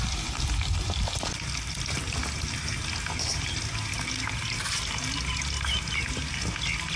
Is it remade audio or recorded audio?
recorded